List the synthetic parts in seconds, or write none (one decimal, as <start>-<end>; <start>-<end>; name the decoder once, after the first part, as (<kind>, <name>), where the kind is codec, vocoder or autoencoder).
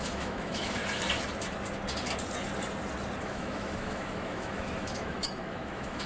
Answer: 0.0-0.8 (autoencoder, DAC-VAE); 3.2-6.1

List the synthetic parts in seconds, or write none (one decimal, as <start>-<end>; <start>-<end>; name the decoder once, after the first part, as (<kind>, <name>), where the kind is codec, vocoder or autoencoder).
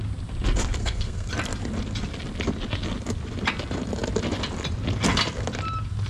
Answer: 0.8-1.3 (codec, SNAC)